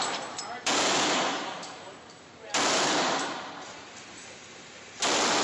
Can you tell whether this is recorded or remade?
recorded